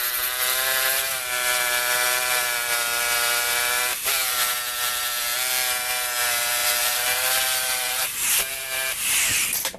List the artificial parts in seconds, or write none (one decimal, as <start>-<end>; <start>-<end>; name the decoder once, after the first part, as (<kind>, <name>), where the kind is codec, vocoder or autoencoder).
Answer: 3.9-4.5 (vocoder, BigVGAN v2); 6.6-7.4